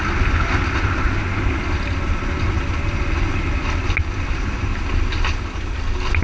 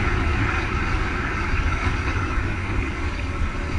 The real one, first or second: first